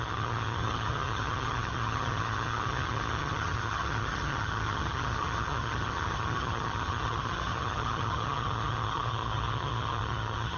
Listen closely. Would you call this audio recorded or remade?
remade